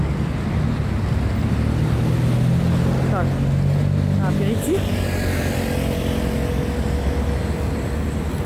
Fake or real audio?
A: real